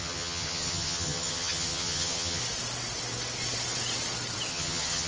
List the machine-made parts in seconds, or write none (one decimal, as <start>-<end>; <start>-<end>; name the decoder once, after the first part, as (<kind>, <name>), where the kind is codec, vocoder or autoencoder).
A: 0.0-2.4 (vocoder, HiFi-GAN); 4.5-5.1

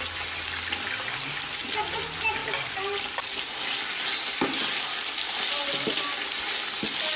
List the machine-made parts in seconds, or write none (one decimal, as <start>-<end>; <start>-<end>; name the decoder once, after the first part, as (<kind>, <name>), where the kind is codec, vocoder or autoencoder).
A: none

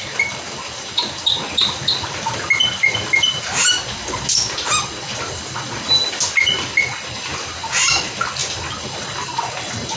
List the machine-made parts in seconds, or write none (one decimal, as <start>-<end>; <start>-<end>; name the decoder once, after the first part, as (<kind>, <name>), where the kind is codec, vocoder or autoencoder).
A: none